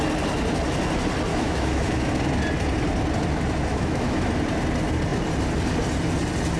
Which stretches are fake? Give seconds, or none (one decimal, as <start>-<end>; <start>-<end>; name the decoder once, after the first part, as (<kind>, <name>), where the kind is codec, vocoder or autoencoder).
1.3-2.1 (autoencoder, DAC-VAE); 3.7-4.3